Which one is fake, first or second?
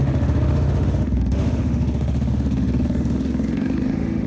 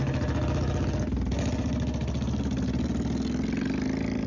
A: first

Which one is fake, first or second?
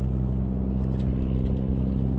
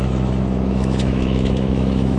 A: second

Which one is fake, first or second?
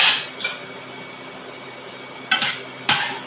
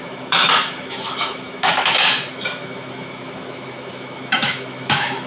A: second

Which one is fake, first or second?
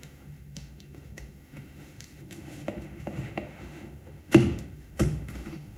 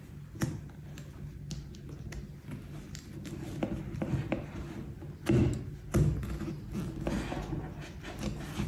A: first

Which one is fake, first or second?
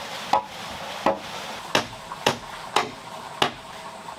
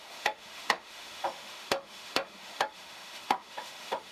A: second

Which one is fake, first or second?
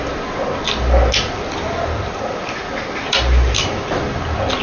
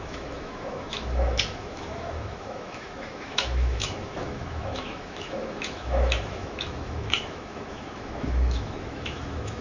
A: second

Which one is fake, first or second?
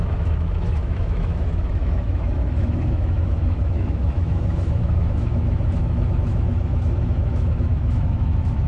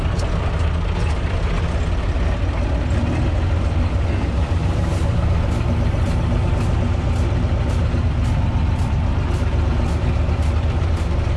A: first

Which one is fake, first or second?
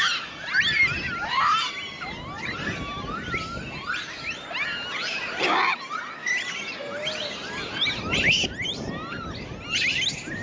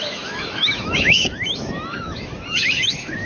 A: second